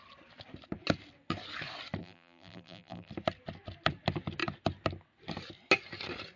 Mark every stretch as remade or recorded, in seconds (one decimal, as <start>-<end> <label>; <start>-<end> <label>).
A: 0.0-2.0 recorded; 2.0-3.1 remade; 3.1-6.4 recorded